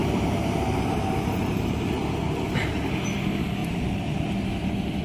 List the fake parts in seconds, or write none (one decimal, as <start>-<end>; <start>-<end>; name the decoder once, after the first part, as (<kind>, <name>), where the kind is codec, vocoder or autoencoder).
0.0-2.0 (vocoder, BigVGAN v2); 3.6-4.3